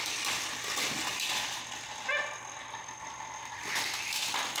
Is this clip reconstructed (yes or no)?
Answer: no